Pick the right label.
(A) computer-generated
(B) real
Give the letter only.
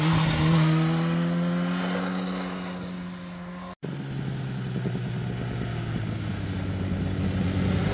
B